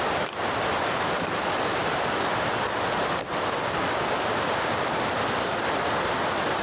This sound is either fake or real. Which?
real